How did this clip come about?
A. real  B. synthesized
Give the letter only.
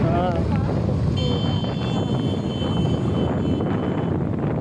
A